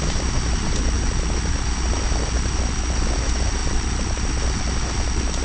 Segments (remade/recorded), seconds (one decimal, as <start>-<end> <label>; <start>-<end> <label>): 0.0-5.4 recorded